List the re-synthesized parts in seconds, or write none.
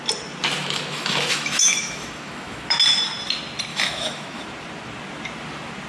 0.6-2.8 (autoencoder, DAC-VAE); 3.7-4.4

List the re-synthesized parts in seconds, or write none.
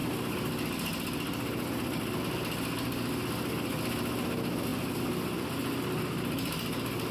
none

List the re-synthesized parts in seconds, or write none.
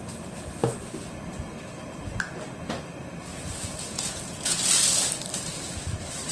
3.3-4.6 (vocoder, Vocos)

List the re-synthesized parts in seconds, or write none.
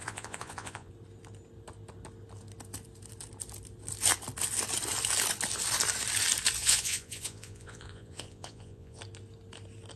0.0-0.9 (vocoder, Vocos); 6.6-9.0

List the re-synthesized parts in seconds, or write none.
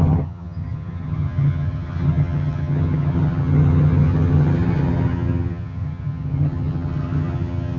0.0-7.8 (vocoder, HiFi-GAN)